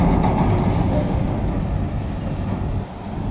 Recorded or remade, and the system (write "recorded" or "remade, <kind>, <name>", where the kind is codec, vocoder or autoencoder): recorded